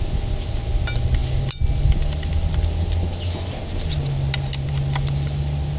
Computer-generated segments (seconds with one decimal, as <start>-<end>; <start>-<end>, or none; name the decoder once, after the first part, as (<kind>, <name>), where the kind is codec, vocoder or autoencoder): none

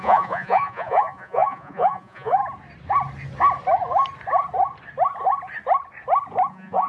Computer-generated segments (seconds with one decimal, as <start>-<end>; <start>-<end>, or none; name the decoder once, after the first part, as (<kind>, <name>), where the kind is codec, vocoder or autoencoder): 0.0-2.4 (vocoder, Vocos); 6.5-6.9

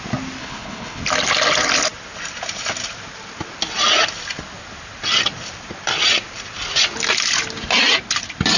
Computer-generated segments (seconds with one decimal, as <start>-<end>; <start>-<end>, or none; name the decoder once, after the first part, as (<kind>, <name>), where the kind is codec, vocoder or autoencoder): 0.4-1.0 (codec, HILCodec)

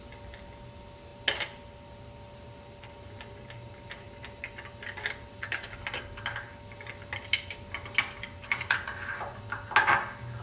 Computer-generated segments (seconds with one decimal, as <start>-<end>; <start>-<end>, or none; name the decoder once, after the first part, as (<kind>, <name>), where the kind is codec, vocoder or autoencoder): none

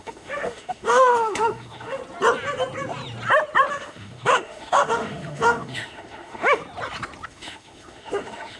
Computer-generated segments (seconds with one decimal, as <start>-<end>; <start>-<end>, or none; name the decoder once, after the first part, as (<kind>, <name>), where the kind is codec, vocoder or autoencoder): 0.0-2.0 (autoencoder, DAC-VAE); 3.7-6.6; 7.3-8.6

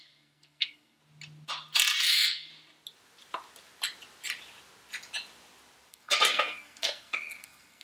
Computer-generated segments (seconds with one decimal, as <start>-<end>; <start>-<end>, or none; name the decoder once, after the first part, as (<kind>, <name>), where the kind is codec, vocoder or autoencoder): 0.0-1.0 (codec, SNAC); 2.0-2.5; 5.9-7.8